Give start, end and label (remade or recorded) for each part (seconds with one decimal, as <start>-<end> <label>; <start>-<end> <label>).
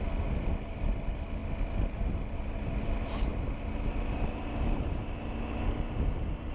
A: 0.0-6.5 recorded